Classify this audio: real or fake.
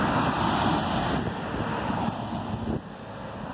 real